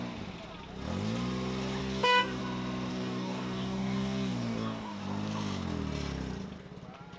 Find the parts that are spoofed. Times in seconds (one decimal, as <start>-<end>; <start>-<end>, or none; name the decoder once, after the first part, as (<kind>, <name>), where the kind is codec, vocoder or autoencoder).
1.8-2.4 (codec, DAC); 2.9-5.0